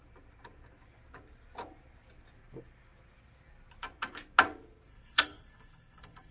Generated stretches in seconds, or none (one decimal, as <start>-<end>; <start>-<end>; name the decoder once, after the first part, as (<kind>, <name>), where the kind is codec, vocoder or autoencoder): 4.9-6.3 (codec, SNAC)